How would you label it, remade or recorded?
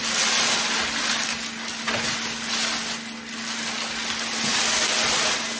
recorded